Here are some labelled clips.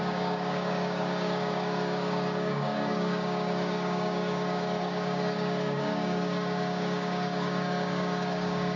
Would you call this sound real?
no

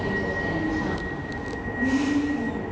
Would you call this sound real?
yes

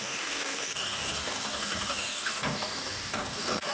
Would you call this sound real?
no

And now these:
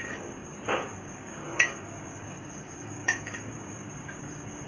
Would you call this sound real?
no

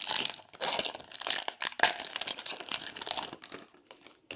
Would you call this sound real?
yes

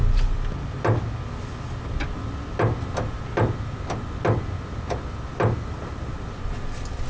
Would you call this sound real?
yes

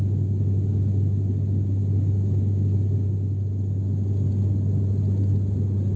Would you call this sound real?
yes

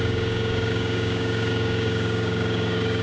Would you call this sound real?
no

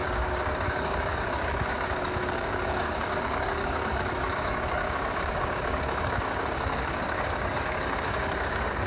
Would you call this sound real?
no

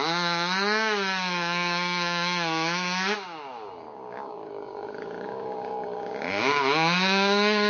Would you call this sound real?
no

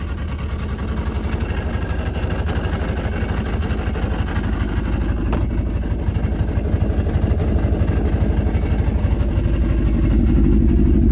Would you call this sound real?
yes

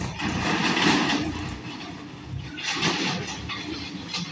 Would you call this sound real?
yes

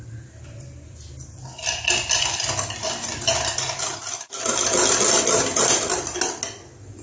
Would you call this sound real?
yes